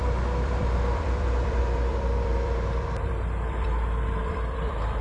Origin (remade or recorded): remade